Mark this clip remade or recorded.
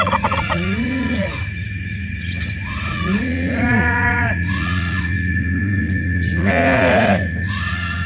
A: remade